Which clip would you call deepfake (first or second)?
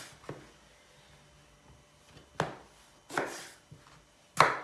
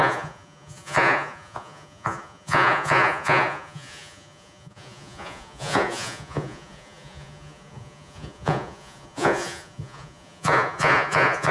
second